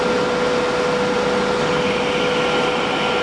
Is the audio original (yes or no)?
yes